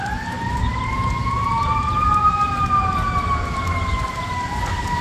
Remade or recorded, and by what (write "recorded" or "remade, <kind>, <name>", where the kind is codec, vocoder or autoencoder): recorded